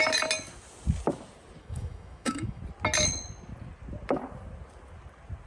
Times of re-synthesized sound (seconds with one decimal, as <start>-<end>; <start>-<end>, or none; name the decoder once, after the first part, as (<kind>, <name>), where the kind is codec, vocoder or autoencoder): 1.6-2.6 (autoencoder, DAC-VAE)